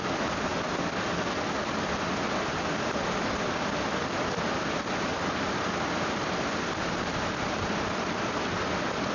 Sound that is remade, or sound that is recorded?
recorded